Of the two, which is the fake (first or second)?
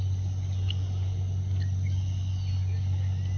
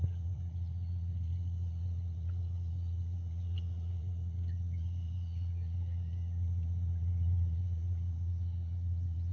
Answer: second